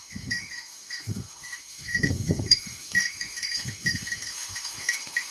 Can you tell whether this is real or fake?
fake